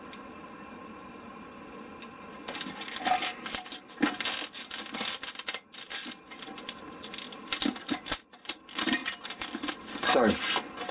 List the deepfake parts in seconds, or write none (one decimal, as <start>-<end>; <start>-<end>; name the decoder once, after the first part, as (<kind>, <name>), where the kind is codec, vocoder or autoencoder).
none